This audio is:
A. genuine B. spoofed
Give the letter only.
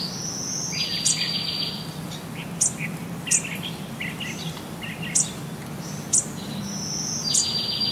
A